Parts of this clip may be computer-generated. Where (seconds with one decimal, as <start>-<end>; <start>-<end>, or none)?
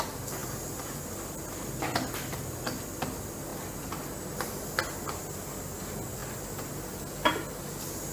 none